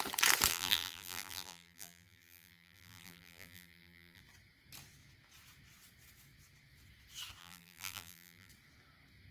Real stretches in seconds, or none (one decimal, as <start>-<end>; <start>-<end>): 0.0-0.5; 4.2-7.4; 8.5-9.3